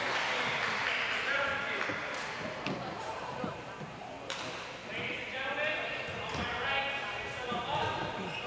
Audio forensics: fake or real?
fake